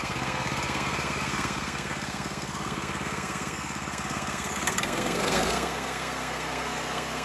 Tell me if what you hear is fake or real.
fake